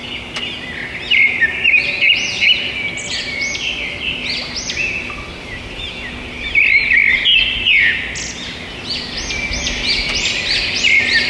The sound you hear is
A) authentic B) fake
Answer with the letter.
A